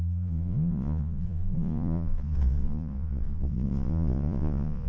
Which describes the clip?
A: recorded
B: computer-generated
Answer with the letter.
B